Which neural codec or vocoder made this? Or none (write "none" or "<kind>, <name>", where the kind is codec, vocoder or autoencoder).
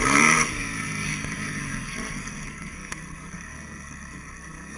codec, SNAC